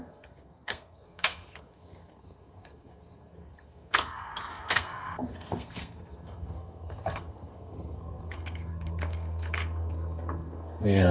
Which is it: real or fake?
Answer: fake